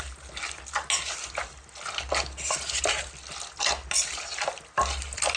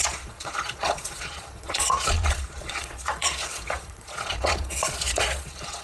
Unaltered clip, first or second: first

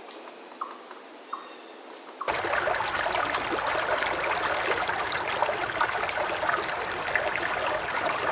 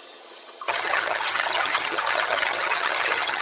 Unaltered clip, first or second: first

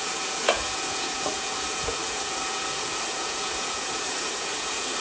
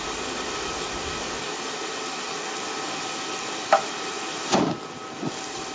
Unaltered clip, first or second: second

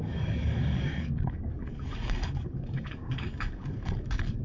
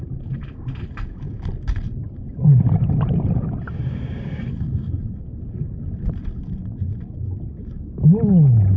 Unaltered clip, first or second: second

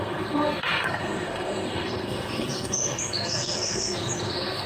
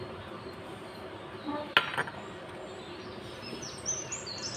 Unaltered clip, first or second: second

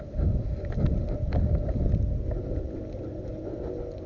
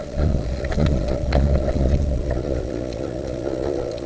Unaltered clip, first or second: first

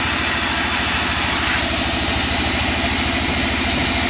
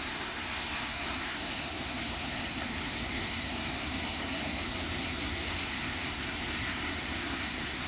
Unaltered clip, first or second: first